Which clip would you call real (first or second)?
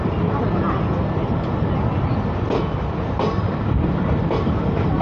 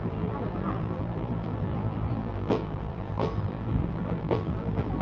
first